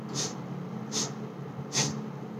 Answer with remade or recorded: recorded